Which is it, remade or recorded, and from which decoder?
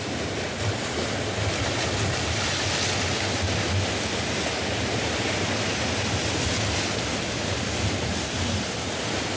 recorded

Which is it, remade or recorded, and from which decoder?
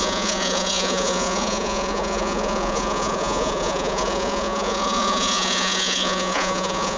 remade, vocoder, Vocos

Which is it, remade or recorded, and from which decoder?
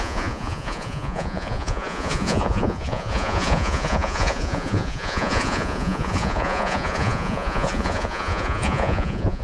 remade, vocoder, Vocos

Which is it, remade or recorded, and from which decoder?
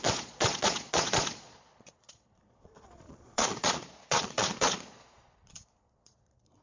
remade, vocoder, Vocos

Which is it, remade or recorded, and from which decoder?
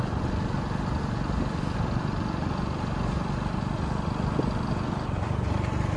recorded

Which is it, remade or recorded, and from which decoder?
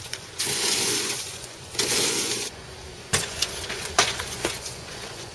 remade, vocoder, Vocos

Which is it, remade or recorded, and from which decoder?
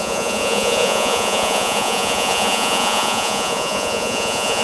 remade, vocoder, Vocos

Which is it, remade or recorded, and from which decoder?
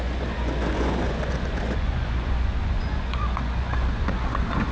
remade, vocoder, Vocos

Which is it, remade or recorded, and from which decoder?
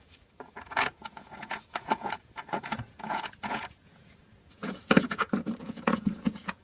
remade, vocoder, Vocos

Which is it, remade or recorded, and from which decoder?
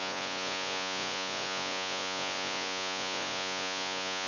remade, vocoder, Vocos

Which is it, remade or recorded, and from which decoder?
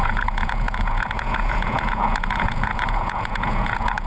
remade, vocoder, Vocos